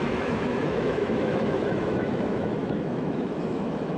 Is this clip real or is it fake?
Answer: fake